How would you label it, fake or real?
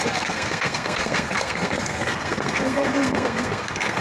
fake